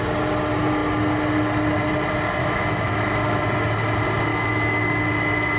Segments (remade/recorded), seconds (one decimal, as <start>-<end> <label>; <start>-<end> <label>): 0.0-2.4 recorded; 2.4-3.4 remade; 3.4-4.3 recorded; 4.3-5.0 remade; 5.0-5.6 recorded